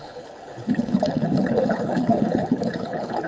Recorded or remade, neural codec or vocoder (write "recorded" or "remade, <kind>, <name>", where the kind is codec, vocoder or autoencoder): remade, codec, HILCodec